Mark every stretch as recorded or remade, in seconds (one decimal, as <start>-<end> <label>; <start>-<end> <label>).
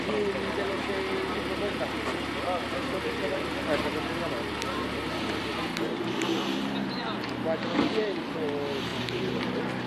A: 0.0-8.9 recorded; 8.9-9.5 remade; 9.5-9.9 recorded